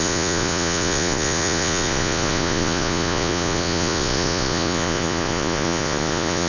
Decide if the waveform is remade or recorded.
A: remade